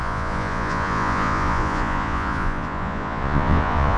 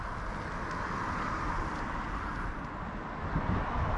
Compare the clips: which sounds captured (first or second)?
second